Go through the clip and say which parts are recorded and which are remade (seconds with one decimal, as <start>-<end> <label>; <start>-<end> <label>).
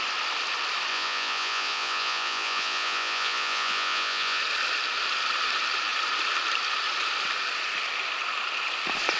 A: 0.0-0.9 recorded; 0.9-4.4 remade; 4.4-9.2 recorded